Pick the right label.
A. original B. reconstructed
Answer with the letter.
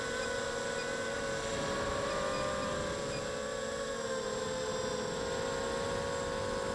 A